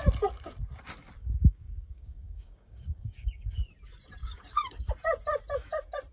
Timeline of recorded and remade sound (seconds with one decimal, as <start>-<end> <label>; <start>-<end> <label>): 0.0-1.2 recorded; 1.2-3.7 remade; 3.7-4.2 recorded; 4.2-4.9 remade; 4.9-6.1 recorded